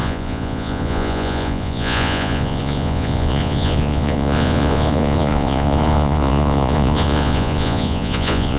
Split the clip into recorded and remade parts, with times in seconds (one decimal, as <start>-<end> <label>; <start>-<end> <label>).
0.0-8.6 remade